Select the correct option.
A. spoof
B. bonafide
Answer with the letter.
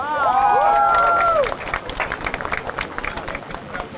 B